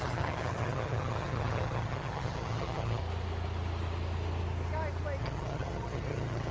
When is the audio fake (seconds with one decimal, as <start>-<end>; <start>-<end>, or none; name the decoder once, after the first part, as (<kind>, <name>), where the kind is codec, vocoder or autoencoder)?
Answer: 0.0-3.0 (vocoder, HiFi-GAN); 5.2-6.5

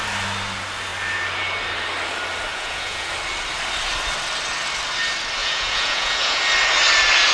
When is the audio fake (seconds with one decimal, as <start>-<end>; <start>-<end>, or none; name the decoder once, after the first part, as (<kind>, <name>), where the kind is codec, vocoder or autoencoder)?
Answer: 2.5-3.1 (vocoder, Vocos); 5.4-6.4

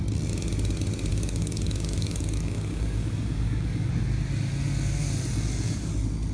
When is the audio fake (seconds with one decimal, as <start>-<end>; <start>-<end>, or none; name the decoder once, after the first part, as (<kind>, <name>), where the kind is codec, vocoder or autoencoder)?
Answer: 1.1-3.9 (codec, DAC)

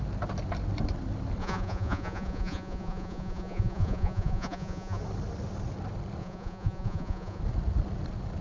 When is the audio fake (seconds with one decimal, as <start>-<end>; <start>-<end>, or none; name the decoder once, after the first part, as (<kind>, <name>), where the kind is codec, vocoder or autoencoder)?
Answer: 1.4-5.0 (vocoder, Vocos); 6.2-7.4

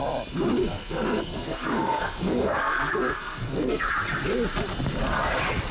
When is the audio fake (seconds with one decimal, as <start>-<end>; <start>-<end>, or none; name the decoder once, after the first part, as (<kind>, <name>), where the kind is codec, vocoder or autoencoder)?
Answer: 0.6-3.9 (codec, SNAC)

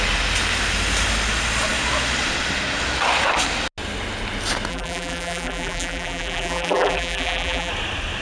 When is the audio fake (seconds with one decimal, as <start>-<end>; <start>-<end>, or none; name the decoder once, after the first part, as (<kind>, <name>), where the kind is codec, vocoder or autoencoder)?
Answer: 4.7-7.7 (vocoder, BigVGAN v2)